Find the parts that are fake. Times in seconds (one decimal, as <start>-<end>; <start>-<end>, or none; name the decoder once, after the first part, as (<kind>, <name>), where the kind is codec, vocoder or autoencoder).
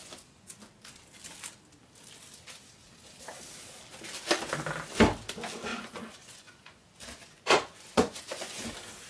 0.0-0.7 (vocoder, Vocos); 5.7-8.7